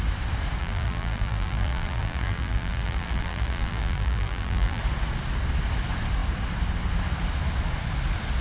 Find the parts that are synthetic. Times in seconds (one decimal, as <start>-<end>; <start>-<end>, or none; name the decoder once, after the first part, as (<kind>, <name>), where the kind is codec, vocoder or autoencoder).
0.6-4.8 (vocoder, BigVGAN v2)